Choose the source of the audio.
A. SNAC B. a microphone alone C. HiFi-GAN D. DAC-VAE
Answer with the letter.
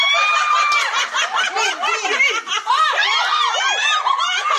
B